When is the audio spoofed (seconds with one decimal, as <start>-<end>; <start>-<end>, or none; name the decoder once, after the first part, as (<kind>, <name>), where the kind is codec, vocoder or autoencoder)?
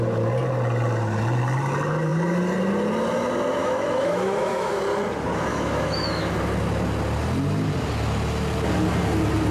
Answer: 3.6-4.8 (autoencoder, DAC-VAE); 5.5-6.3